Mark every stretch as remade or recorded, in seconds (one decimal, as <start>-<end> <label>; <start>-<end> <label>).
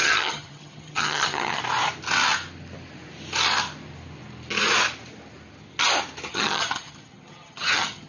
0.0-1.6 remade; 1.6-6.3 recorded; 6.3-8.1 remade